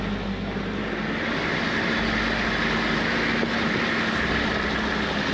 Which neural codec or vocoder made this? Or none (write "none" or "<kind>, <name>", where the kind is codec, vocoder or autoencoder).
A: none